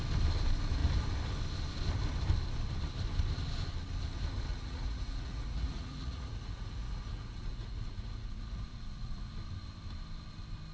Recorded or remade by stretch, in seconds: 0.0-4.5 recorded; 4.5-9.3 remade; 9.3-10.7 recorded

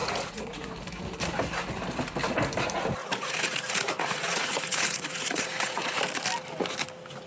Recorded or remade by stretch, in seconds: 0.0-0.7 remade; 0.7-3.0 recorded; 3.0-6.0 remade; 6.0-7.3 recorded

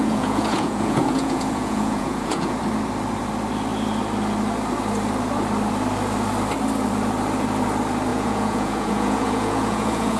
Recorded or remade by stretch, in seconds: 0.0-2.6 remade; 2.6-8.1 recorded; 8.1-10.2 remade

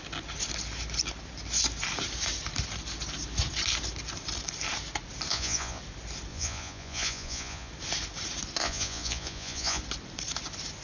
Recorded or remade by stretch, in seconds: 0.0-5.3 recorded; 5.3-5.8 remade; 5.8-6.3 recorded; 6.3-7.7 remade; 7.7-8.6 recorded; 8.6-9.8 remade; 9.8-10.8 recorded